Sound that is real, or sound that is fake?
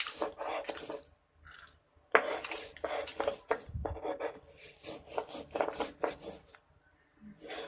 real